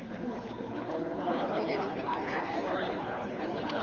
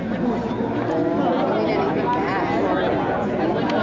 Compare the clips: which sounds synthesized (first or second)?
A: first